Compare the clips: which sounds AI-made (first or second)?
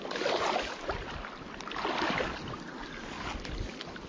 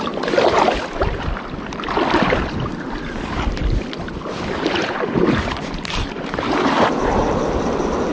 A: second